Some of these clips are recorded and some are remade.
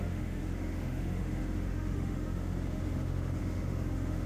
remade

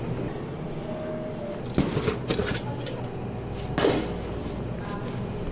recorded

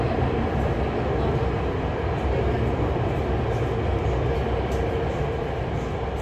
recorded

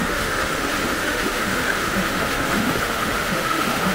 remade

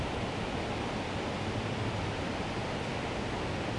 recorded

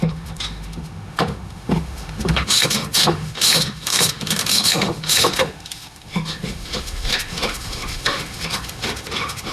remade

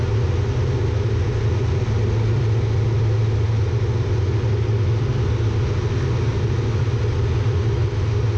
recorded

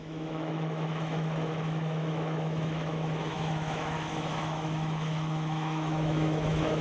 remade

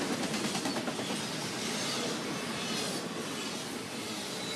recorded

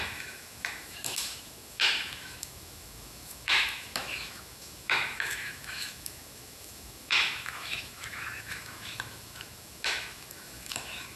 remade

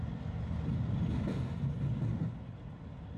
recorded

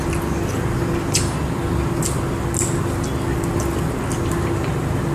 recorded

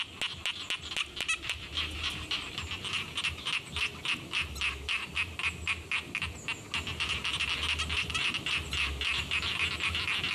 recorded